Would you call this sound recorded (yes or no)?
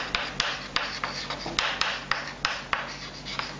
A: yes